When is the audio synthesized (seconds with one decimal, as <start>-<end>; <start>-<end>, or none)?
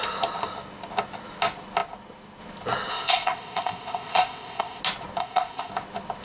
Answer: 2.9-4.8; 5.2-5.7